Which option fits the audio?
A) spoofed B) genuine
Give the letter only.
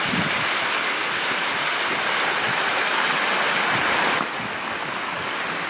B